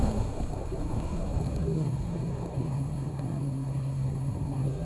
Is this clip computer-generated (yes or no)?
yes